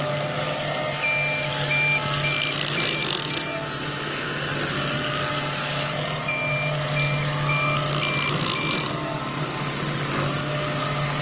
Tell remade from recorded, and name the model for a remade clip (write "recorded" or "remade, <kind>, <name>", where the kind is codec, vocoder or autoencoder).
recorded